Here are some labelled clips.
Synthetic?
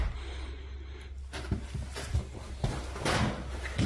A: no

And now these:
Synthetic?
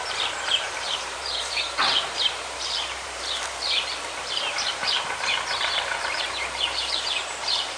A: yes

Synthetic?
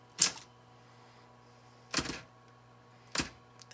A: no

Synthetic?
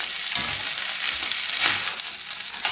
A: no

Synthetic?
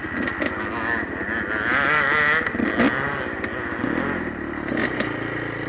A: no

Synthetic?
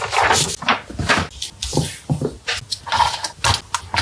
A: no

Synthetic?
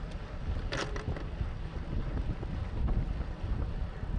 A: no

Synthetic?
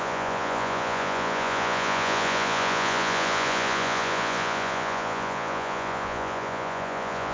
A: yes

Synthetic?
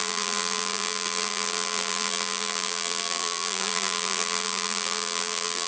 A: yes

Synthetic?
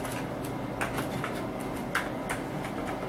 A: no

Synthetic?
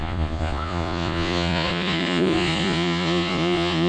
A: yes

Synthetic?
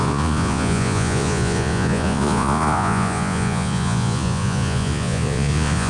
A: yes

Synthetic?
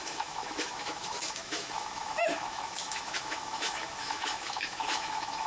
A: yes